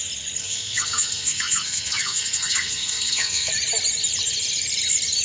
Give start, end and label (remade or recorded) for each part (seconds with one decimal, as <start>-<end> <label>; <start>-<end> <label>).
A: 0.0-0.4 recorded; 0.4-3.5 remade; 3.5-5.2 recorded